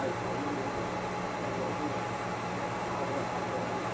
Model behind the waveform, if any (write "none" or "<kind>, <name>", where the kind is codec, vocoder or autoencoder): none